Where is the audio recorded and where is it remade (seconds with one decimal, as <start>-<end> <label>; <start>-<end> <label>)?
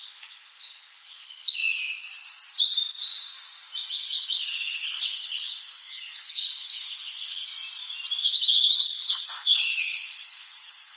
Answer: 0.0-1.6 remade; 1.6-3.9 recorded; 3.9-7.5 remade; 7.5-8.2 recorded; 8.2-11.0 remade